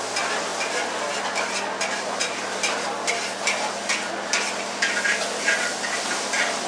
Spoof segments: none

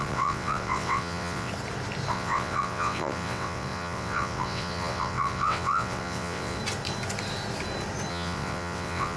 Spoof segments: 0.0-1.5 (vocoder, WaveNeXt); 2.1-6.6; 8.1-9.2